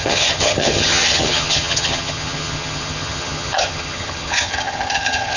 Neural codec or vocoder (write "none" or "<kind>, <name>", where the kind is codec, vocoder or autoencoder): vocoder, HiFi-GAN